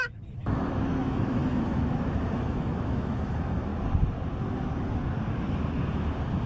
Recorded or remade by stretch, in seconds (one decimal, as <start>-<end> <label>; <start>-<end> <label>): 0.0-3.7 remade; 3.7-6.5 recorded